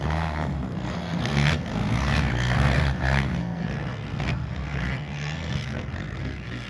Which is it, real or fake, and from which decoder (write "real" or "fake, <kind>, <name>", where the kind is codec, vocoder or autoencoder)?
fake, codec, SNAC